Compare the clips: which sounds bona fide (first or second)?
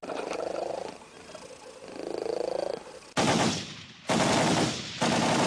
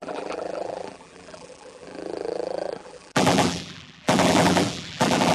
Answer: first